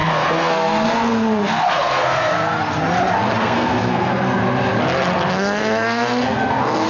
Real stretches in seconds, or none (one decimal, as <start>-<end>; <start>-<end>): 2.3-3.4; 4.4-5.3

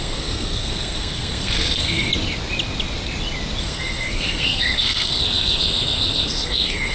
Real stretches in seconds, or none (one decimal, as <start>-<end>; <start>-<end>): 2.1-3.6

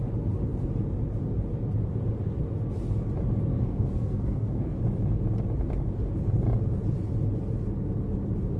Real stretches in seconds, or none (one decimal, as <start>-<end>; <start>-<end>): 0.0-3.5; 4.8-8.6

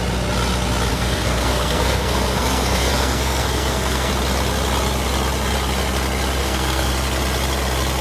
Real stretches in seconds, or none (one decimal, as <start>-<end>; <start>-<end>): 0.0-0.9; 4.1-6.4; 6.9-8.0

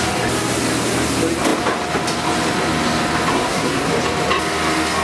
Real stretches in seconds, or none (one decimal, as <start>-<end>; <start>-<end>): 0.0-3.3; 3.9-5.0